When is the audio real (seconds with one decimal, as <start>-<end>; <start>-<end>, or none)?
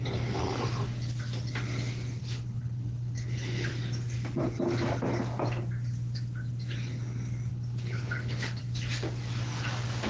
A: 0.0-2.2; 3.7-7.5; 8.6-10.1